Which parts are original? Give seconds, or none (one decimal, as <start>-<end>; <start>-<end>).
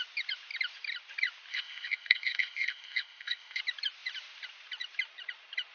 0.0-1.5; 3.6-5.7